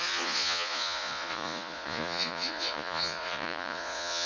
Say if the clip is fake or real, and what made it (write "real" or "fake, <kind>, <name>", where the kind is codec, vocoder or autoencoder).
fake, vocoder, Vocos